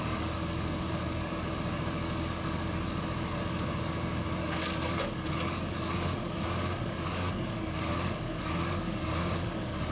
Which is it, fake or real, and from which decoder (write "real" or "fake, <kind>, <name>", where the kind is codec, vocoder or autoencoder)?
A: fake, codec, DAC